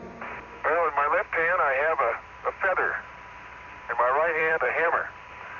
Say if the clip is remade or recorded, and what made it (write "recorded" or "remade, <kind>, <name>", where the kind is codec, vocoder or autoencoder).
remade, vocoder, BigVGAN v2